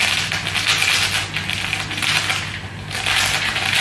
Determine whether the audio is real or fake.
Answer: real